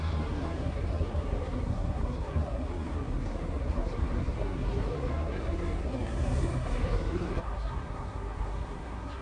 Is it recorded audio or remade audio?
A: remade